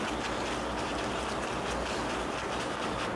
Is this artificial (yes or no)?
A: no